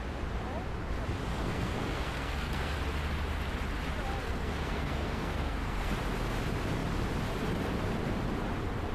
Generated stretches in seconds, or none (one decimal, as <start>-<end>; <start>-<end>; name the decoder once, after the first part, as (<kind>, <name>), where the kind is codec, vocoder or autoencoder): 1.3-2.8 (codec, SNAC); 4.2-5.9

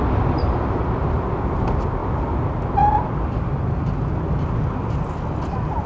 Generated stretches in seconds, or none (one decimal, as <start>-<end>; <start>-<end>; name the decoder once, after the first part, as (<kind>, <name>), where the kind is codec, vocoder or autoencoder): none

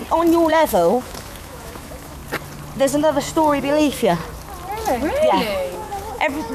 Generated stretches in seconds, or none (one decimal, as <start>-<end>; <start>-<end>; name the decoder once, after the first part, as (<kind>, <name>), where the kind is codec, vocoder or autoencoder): 0.5-2.2 (autoencoder, DAC-VAE); 3.6-4.2; 5.3-6.5

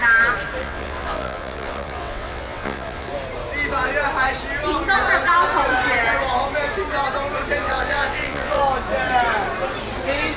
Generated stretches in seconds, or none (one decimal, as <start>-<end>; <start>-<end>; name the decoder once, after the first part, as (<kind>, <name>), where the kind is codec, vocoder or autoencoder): 0.6-3.1 (vocoder, WaveNeXt); 7.6-8.6

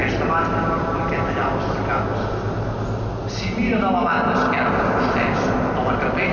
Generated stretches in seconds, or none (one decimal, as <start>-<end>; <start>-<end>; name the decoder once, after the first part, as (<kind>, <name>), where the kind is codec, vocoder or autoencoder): none